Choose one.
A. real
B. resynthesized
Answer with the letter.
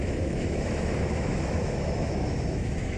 B